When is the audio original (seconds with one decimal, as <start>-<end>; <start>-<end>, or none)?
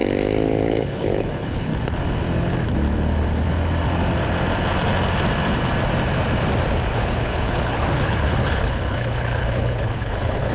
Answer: 0.0-0.7; 1.7-6.9